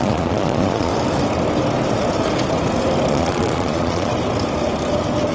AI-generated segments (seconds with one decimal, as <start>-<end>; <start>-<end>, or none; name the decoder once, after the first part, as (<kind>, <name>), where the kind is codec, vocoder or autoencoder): 0.0-0.9 (vocoder, Vocos); 3.1-4.1